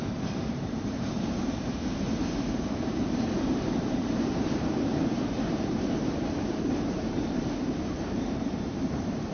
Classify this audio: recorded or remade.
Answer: remade